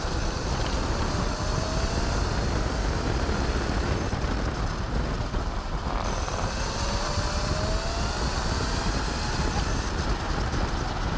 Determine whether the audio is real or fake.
real